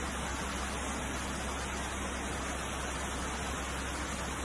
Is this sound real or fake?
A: real